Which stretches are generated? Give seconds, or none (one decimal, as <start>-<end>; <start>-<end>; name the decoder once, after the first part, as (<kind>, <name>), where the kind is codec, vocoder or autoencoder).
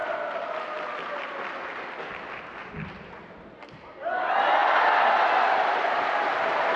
none